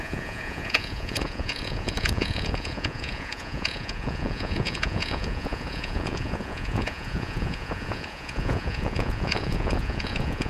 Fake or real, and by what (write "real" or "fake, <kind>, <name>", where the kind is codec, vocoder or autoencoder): fake, vocoder, Vocos